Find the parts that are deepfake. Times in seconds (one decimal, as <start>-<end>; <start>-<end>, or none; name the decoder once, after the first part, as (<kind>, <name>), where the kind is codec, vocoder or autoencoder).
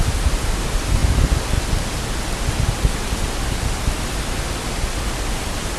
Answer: none